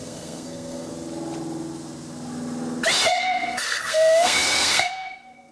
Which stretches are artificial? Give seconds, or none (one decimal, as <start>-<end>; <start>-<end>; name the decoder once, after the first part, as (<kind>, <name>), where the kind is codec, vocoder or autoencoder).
0.0-0.9 (codec, SNAC); 3.2-5.5